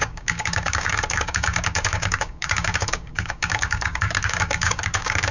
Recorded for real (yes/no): no